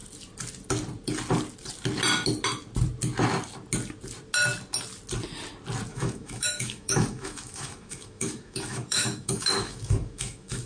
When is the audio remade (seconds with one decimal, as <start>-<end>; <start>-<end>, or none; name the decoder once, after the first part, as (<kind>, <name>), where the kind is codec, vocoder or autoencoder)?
5.9-10.7 (autoencoder, DAC-VAE)